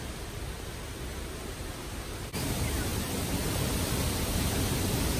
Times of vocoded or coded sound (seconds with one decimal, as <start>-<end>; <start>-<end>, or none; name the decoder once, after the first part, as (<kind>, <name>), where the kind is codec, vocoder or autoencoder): none